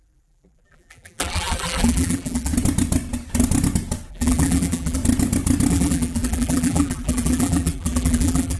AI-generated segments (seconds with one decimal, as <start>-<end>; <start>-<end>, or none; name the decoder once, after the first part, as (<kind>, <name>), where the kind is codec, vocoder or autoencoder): 0.0-2.5 (vocoder, BigVGAN v2); 4.1-5.0; 5.7-8.6